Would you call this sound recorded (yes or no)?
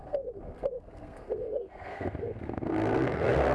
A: no